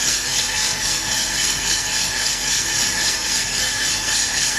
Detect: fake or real fake